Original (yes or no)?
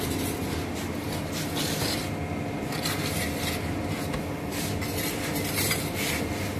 yes